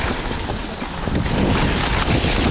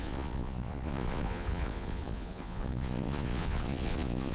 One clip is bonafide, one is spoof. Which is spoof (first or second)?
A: second